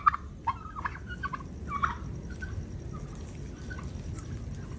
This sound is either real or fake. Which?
real